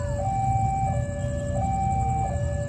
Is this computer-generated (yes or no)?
no